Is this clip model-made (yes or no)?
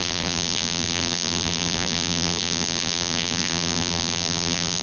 yes